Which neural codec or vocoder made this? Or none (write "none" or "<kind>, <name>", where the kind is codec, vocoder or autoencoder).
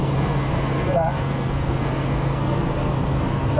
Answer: codec, SNAC